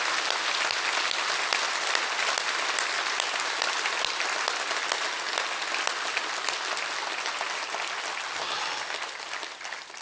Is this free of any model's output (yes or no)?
yes